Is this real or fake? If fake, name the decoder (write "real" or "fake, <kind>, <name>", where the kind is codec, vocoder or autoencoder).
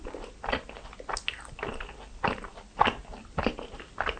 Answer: real